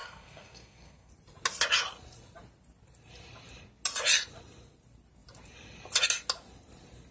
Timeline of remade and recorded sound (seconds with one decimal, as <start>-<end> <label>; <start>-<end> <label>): 0.0-1.1 remade; 1.1-7.1 recorded